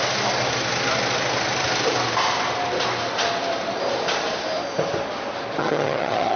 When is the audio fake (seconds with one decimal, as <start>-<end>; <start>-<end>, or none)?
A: 5.6-6.4